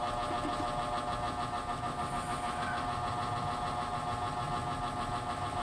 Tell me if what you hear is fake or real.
real